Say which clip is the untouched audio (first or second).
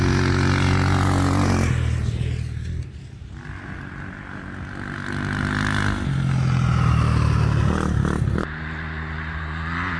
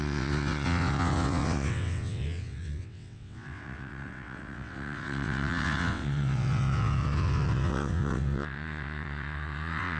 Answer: first